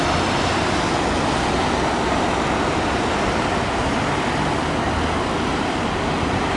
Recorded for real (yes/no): yes